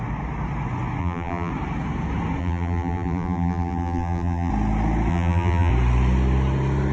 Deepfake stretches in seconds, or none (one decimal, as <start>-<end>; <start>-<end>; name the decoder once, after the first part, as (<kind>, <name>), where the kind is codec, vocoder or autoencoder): 1.0-1.5 (vocoder, BigVGAN v2); 2.4-4.5; 5.1-5.7